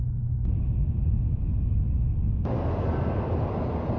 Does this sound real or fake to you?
real